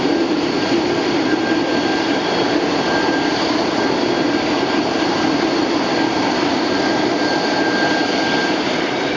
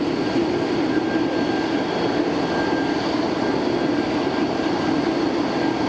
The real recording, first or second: second